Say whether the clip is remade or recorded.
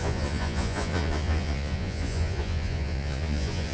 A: remade